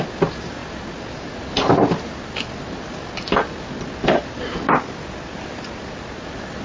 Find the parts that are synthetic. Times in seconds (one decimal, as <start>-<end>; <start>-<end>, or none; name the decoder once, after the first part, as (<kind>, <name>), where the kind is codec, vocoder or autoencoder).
none